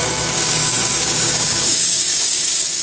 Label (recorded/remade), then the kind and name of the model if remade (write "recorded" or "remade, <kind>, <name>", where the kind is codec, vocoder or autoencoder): remade, codec, DAC